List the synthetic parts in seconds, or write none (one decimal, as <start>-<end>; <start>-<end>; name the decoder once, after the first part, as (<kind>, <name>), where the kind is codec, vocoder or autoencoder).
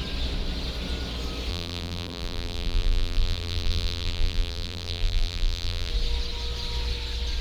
1.5-5.9 (vocoder, BigVGAN v2)